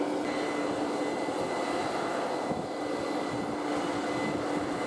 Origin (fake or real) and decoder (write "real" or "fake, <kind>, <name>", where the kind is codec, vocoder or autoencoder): real